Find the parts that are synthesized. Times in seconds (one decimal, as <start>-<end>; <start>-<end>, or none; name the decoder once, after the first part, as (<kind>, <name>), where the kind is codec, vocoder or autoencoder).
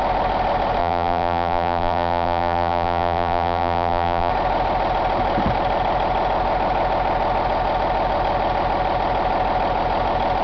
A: 0.8-4.3 (vocoder, BigVGAN v2)